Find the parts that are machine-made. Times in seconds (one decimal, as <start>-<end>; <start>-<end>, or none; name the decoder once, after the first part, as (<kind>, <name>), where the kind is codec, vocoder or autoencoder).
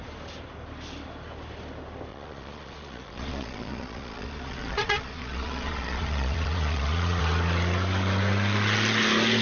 2.1-7.2 (vocoder, Vocos)